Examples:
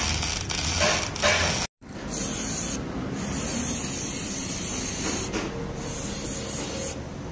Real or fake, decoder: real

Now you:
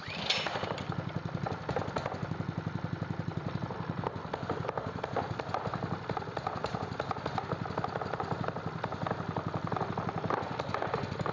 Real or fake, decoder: real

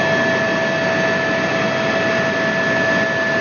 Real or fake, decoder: real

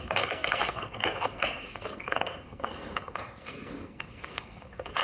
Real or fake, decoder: fake, codec, SNAC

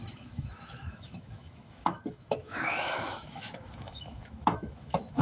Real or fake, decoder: fake, autoencoder, DAC-VAE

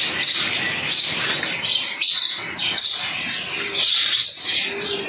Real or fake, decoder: real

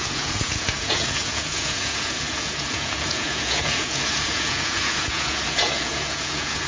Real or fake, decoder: fake, vocoder, Vocos